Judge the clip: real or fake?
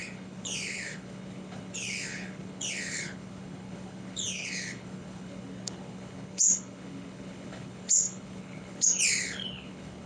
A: fake